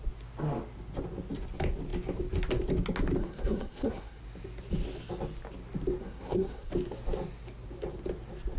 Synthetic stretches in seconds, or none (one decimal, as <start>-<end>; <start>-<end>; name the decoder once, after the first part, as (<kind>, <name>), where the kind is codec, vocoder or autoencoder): 3.2-4.2 (codec, SNAC); 6.0-6.7

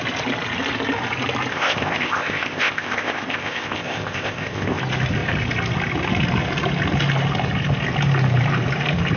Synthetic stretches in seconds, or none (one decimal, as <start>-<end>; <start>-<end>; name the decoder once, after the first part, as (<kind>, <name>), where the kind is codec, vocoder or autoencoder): 1.5-4.8 (codec, ZipCodec)

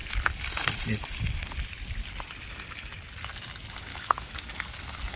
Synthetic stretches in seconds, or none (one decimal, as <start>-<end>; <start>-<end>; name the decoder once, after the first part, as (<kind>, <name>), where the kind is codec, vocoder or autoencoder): 3.9-4.5 (autoencoder, DAC-VAE)